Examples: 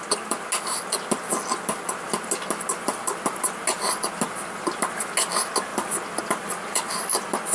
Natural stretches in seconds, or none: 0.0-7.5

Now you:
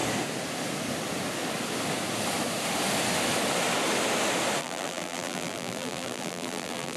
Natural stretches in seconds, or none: 0.0-4.6

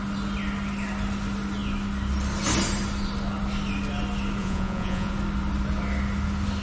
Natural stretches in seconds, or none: 0.0-4.4; 5.1-6.6

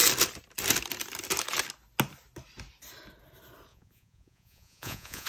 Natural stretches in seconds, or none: 0.0-3.7